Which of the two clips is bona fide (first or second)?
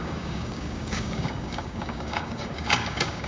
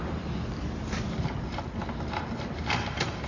second